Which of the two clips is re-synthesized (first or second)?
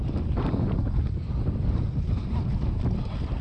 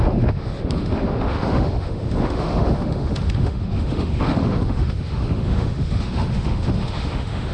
second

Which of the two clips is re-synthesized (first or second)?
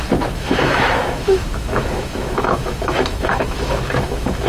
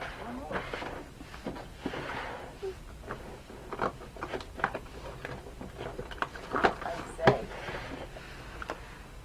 first